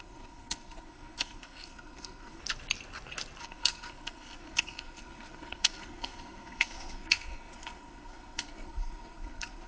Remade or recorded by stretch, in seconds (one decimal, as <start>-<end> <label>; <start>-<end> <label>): 0.0-2.4 remade; 2.4-3.4 recorded; 3.4-9.7 remade